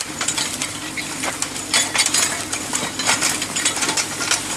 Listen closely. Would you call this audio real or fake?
fake